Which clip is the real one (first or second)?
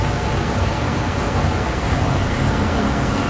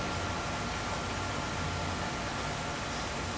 second